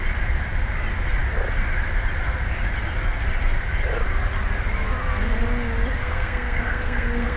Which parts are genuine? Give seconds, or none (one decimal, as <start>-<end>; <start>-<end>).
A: 0.0-6.0